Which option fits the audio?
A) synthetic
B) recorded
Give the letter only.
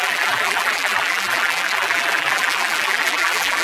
A